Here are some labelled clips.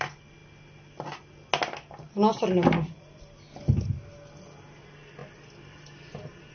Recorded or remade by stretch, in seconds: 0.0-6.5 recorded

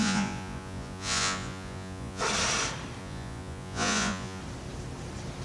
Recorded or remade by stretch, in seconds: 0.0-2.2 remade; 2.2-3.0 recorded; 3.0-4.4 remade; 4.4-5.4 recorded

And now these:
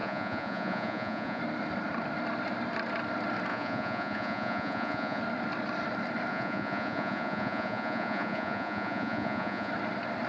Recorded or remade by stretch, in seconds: 0.0-1.4 remade; 1.4-3.5 recorded; 3.5-5.2 remade; 5.2-6.3 recorded; 6.3-9.7 remade; 9.7-10.3 recorded

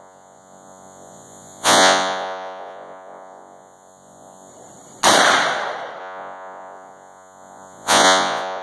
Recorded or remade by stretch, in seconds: 0.0-4.5 remade; 4.5-6.0 recorded; 6.0-8.6 remade

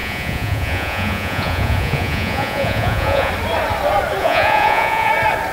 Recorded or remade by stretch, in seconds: 0.0-3.3 remade; 3.3-4.2 recorded; 4.2-5.1 remade; 5.1-5.5 recorded

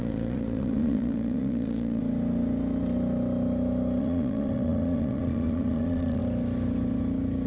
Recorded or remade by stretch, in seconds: 0.0-2.0 remade; 2.0-4.0 recorded; 4.0-6.2 remade; 6.2-7.5 recorded

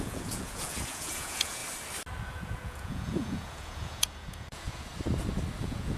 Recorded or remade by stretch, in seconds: 0.0-1.6 remade; 1.6-2.2 recorded; 2.2-4.9 remade; 4.9-5.6 recorded; 5.6-6.0 remade